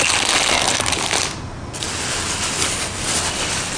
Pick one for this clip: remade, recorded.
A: recorded